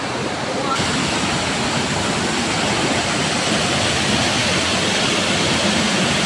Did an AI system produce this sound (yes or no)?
no